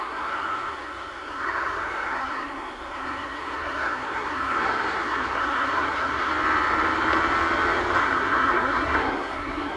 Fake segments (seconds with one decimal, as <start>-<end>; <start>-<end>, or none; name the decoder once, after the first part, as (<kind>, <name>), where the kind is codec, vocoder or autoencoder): 0.0-6.3 (codec, SNAC); 8.0-9.8